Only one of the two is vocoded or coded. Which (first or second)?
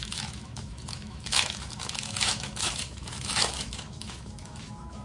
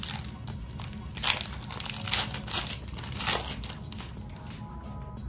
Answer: first